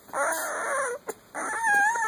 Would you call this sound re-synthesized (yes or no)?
no